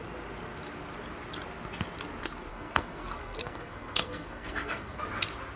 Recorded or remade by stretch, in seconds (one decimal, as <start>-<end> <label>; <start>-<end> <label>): 0.0-2.5 recorded; 2.5-5.0 remade; 5.0-5.6 recorded